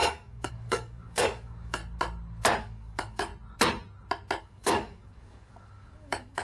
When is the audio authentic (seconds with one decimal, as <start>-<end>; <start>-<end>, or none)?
1.8-2.6; 3.3-4.4

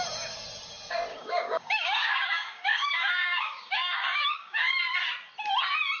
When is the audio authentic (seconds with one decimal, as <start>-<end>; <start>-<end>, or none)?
0.0-1.1; 4.7-6.0

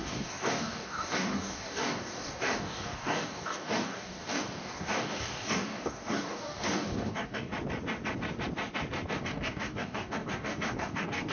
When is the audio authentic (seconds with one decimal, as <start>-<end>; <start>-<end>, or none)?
7.5-9.2

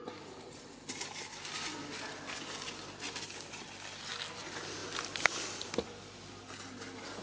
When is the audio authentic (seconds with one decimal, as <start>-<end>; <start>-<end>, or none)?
0.0-7.2

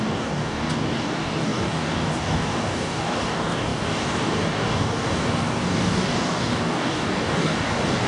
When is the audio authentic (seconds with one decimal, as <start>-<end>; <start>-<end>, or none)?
none

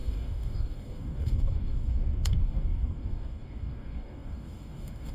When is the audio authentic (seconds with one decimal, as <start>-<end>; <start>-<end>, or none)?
none